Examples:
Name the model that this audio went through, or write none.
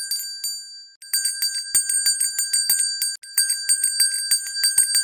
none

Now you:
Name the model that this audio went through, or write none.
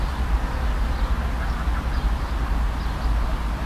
none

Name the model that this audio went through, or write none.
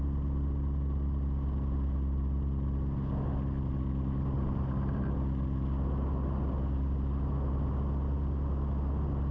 none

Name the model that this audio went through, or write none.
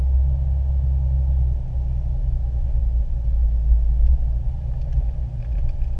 none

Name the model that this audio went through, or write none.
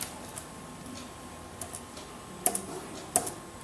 none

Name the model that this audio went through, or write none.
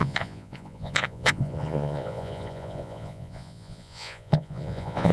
vocoder, Vocos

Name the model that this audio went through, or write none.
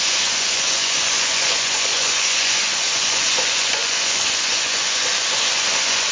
vocoder, Vocos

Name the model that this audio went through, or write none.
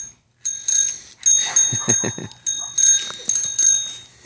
none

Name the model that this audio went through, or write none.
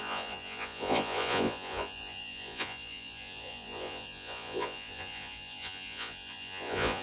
vocoder, Vocos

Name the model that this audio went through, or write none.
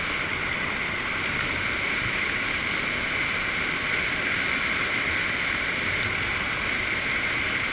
none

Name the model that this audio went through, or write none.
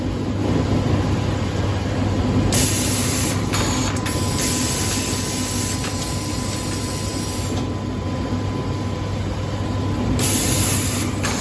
none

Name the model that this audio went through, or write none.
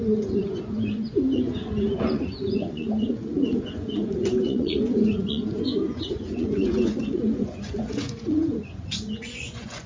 vocoder, Vocos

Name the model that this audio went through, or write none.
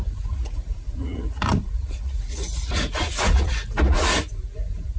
vocoder, Vocos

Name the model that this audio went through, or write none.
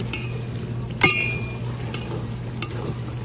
none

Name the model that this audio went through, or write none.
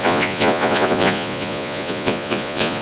vocoder, Vocos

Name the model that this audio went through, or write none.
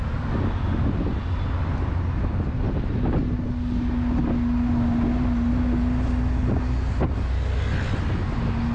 none